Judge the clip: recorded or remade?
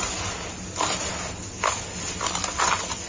recorded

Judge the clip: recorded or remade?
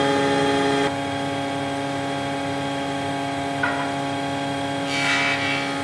recorded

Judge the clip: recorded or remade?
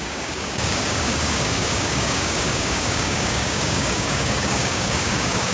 remade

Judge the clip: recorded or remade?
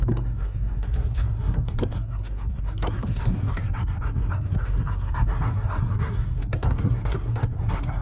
remade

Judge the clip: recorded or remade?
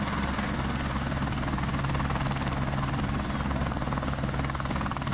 recorded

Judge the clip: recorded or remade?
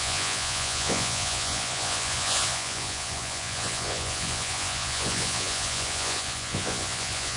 remade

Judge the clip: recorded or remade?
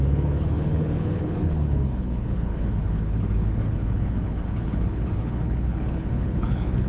remade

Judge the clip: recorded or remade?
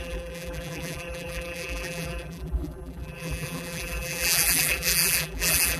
remade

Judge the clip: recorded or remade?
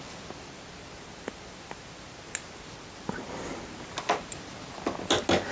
recorded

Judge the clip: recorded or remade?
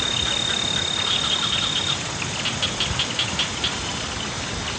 recorded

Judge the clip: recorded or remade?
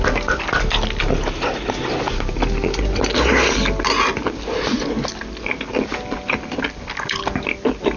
recorded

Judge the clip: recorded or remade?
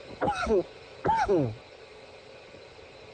recorded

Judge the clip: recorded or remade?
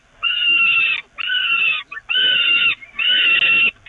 recorded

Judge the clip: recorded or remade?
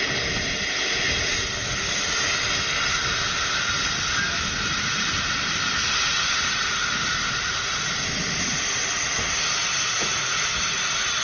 recorded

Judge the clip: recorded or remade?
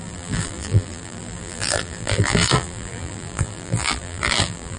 remade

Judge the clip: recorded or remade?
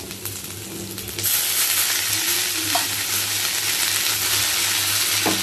recorded